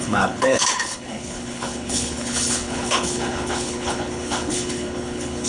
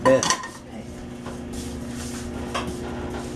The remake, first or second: first